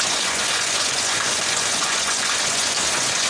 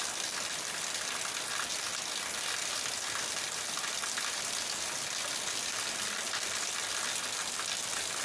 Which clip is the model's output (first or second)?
first